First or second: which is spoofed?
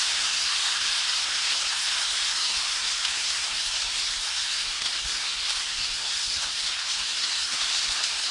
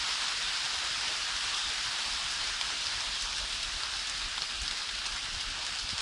first